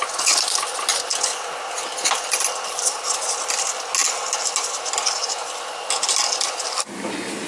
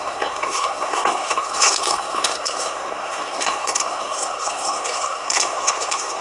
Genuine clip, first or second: first